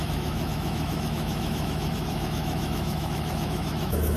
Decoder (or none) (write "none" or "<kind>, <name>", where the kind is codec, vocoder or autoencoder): autoencoder, DAC-VAE